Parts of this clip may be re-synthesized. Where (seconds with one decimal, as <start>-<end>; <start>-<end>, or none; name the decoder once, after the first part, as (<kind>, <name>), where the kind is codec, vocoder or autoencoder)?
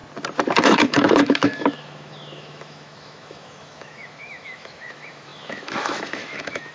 0.6-6.7 (autoencoder, DAC-VAE)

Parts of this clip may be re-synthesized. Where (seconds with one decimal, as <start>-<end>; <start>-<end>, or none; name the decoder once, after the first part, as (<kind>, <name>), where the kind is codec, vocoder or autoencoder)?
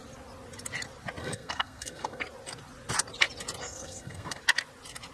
1.2-2.2 (codec, SNAC); 3.6-4.4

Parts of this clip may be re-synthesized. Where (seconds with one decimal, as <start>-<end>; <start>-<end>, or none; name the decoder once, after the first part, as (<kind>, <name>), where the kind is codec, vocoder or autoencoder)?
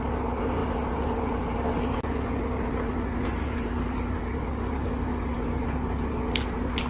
3.4-5.6 (codec, DAC)